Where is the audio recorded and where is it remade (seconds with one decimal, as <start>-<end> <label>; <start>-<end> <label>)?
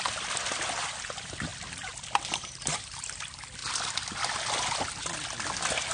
0.0-1.5 remade; 1.5-2.2 recorded; 2.2-3.6 remade; 3.6-5.0 recorded; 5.0-5.9 remade